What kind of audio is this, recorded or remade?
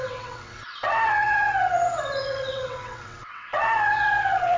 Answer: remade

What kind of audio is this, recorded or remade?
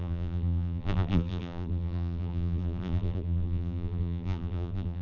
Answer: remade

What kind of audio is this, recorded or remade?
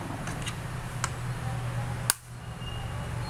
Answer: recorded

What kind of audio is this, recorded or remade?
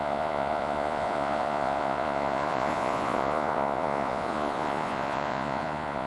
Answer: remade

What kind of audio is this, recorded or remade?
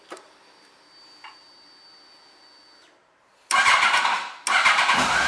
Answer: recorded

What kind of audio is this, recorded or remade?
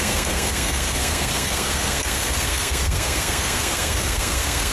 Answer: remade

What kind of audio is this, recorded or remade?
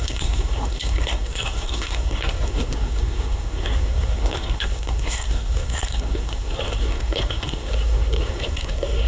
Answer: remade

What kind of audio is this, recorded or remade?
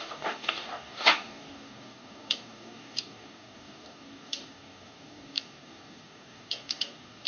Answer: remade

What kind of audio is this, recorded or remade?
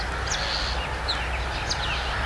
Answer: recorded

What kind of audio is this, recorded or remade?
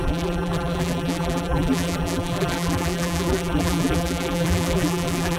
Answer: remade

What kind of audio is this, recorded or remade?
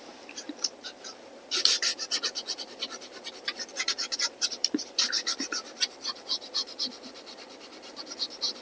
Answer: remade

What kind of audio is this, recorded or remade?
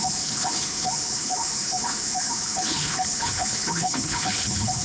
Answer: remade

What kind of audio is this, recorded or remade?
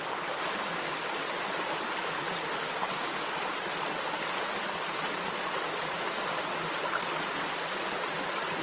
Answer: recorded